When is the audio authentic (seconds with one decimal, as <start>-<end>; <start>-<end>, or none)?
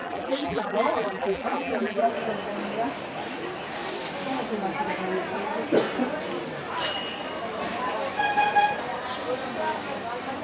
2.1-10.4